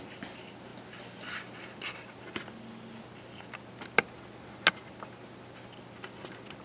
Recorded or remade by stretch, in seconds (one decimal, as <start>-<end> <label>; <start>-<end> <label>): 0.0-6.6 recorded